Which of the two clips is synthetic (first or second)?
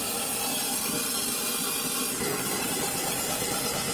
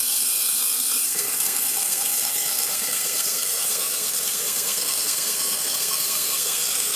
second